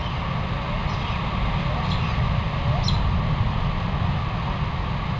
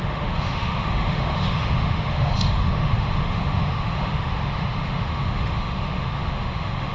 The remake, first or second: second